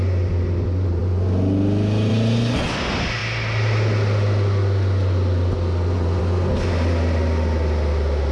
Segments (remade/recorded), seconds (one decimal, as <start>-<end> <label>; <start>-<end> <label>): 0.0-8.3 recorded